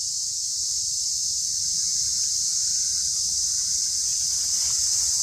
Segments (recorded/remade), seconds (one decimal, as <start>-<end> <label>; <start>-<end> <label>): 0.0-5.2 recorded